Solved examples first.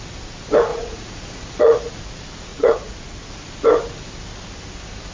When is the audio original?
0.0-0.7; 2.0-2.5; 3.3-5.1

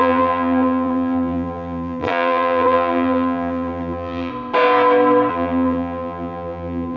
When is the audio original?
4.3-5.3

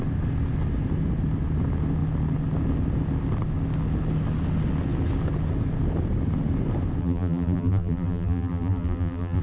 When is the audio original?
0.0-7.0

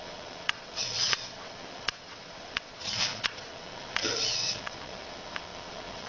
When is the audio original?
none

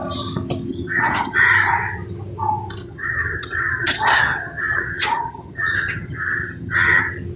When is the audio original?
0.0-0.7; 1.4-2.8; 7.0-7.4

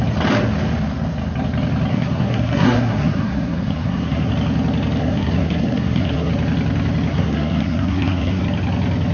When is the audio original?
0.0-1.9; 4.3-5.0; 6.3-7.1; 8.4-9.1

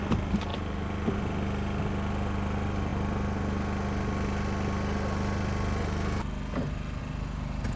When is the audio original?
0.0-7.8